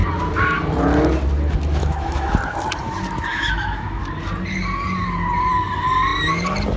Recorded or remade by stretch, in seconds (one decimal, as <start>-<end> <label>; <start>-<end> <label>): 0.0-1.8 recorded; 1.8-2.3 remade; 2.3-3.3 recorded; 3.3-4.0 remade; 4.0-6.8 recorded

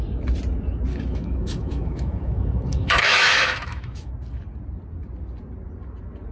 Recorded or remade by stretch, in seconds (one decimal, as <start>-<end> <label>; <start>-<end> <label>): 0.0-0.9 recorded; 0.9-4.1 remade; 4.1-6.3 recorded